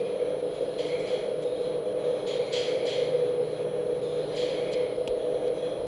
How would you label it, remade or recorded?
recorded